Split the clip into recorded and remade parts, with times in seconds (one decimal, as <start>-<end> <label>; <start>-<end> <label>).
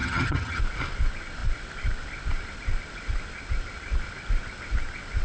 0.0-0.6 remade; 0.6-5.2 recorded